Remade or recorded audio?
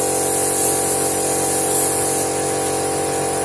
recorded